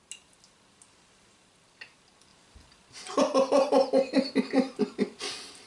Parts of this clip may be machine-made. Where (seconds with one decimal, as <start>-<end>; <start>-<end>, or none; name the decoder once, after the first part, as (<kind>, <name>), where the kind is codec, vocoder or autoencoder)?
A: none